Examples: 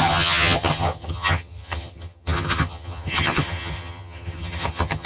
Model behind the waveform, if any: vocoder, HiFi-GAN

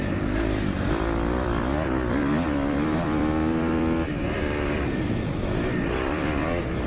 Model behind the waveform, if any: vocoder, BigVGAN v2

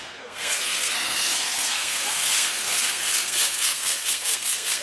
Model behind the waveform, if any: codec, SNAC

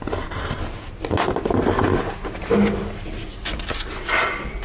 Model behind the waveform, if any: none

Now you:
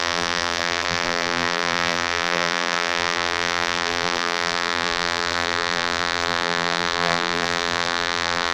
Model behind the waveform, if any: vocoder, BigVGAN v2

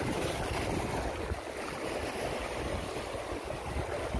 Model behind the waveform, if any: none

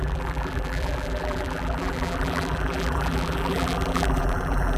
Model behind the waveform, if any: vocoder, BigVGAN v2